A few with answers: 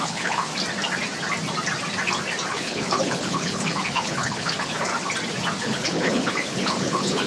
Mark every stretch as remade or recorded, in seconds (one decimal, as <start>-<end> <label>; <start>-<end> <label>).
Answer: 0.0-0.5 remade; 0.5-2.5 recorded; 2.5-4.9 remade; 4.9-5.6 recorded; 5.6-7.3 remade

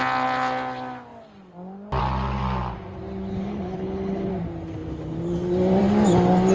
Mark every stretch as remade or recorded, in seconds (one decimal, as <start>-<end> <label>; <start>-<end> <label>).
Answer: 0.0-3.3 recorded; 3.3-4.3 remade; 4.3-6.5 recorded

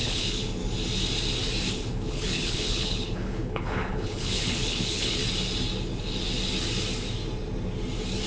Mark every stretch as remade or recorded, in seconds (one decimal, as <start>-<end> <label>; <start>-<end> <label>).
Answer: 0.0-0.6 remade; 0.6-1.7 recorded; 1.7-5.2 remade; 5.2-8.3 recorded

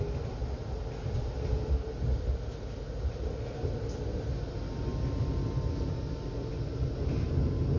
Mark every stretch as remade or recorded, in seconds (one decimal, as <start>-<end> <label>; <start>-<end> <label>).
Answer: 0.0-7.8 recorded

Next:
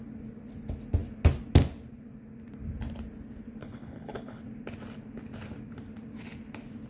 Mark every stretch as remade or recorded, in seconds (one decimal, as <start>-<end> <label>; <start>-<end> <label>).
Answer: 0.0-3.6 recorded; 3.6-4.4 remade; 4.4-6.9 recorded

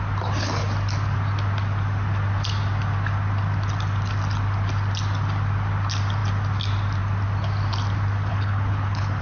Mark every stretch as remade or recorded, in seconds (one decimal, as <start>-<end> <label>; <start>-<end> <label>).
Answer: 0.0-8.3 recorded; 8.3-9.2 remade

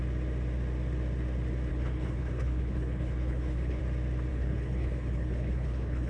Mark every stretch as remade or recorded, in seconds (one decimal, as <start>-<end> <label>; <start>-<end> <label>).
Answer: 0.0-1.7 recorded; 1.7-3.8 remade; 3.8-4.3 recorded; 4.3-6.1 remade